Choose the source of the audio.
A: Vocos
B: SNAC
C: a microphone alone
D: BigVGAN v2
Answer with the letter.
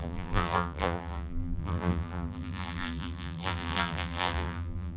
D